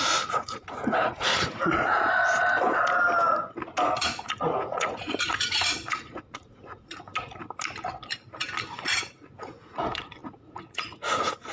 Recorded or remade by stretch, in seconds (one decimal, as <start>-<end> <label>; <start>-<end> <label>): 0.0-2.2 remade; 2.2-4.0 recorded; 4.0-7.1 remade; 7.1-8.7 recorded; 8.7-11.5 remade